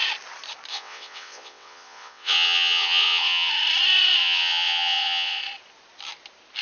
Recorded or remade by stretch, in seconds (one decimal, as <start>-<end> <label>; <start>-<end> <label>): 0.0-0.7 recorded; 0.7-3.5 remade; 3.5-4.2 recorded; 4.2-5.4 remade; 5.4-6.6 recorded